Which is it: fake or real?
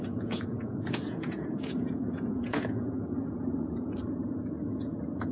fake